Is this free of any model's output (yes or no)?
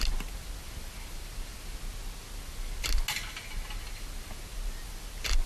yes